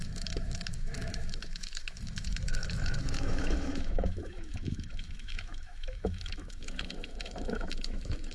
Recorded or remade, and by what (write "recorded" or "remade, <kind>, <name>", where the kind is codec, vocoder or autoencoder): remade, autoencoder, DAC-VAE